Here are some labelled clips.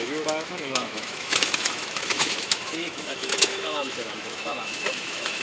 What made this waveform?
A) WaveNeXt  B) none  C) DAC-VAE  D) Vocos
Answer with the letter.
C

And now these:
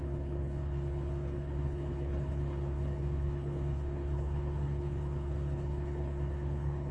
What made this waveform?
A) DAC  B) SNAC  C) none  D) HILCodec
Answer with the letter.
D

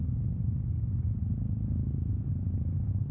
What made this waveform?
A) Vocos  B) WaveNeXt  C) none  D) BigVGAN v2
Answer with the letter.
C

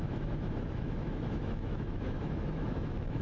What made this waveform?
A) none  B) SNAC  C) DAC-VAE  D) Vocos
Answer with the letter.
C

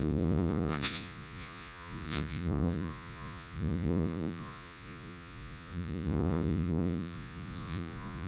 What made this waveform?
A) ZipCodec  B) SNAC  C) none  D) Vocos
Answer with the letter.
D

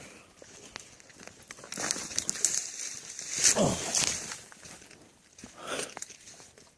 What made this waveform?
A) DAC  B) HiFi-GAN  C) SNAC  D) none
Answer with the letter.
D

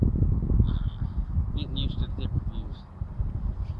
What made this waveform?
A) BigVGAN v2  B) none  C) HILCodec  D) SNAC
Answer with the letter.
B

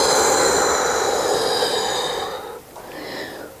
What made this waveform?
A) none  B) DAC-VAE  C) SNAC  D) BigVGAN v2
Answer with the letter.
A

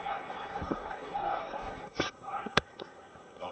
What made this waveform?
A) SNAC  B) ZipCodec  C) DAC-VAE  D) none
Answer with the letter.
A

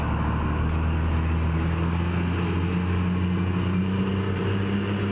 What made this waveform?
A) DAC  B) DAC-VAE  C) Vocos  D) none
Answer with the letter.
D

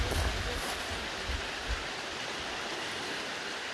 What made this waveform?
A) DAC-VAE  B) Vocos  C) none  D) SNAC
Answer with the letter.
C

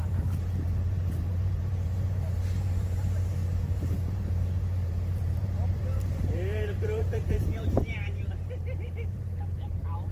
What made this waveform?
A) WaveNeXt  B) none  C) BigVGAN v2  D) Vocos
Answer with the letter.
C